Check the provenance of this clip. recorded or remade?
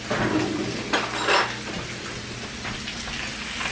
recorded